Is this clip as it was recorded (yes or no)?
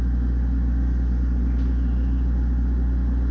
yes